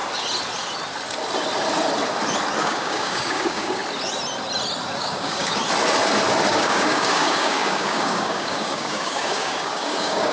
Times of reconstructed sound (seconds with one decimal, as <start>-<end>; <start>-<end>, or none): 2.6-3.8; 5.0-5.6; 6.5-10.3